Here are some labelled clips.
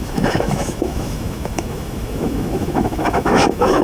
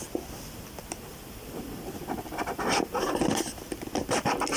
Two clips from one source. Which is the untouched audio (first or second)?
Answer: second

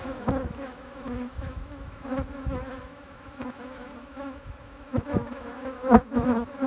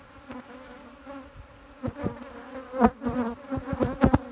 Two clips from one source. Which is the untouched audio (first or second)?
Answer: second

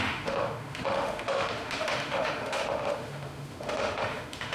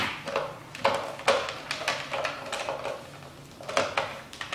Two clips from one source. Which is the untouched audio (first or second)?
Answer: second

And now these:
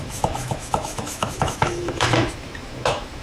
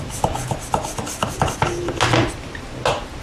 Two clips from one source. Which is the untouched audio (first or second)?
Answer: second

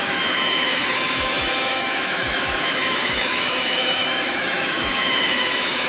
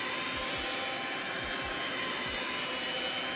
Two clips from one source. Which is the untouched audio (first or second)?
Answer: second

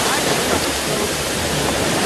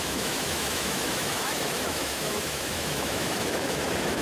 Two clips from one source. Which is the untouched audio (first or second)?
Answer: first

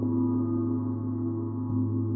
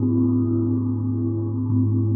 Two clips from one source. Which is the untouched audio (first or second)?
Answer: first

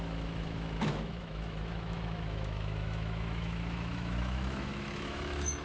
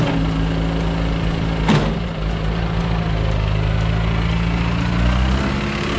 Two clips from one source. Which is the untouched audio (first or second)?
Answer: second